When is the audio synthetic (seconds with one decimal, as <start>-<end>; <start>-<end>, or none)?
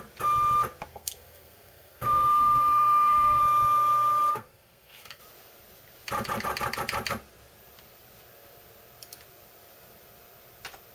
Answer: 0.9-3.4; 4.3-5.2